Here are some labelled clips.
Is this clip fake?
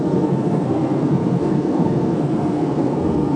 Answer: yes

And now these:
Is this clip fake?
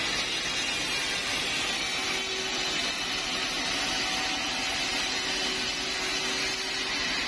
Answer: no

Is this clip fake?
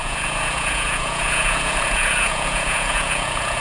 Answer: yes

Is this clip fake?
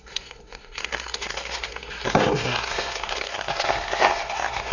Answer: yes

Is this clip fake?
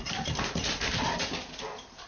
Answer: no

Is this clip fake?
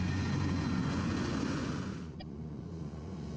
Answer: yes